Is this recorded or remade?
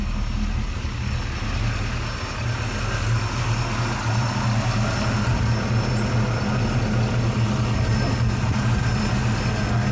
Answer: recorded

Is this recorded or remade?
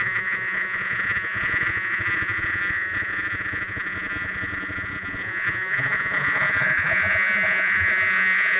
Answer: remade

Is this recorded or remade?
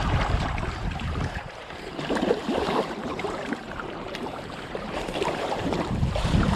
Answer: remade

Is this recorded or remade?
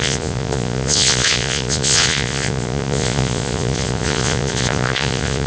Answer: remade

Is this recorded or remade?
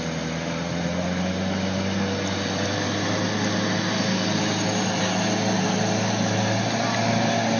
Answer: recorded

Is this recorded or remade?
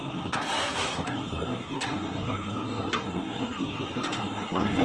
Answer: remade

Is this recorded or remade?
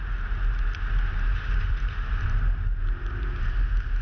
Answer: recorded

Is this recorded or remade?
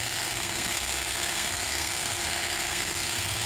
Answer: remade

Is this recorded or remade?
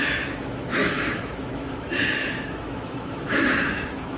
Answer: remade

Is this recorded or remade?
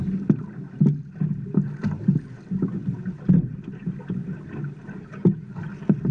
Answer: recorded